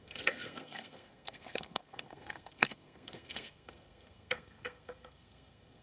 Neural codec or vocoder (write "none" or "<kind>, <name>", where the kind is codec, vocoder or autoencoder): codec, SNAC